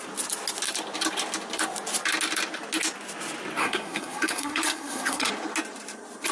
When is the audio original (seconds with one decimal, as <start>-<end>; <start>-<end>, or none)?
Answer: 0.0-3.6; 5.3-6.3